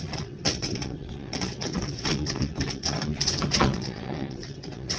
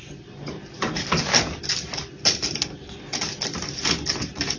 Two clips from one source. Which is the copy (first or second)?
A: first